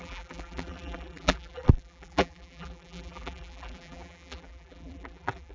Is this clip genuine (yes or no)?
no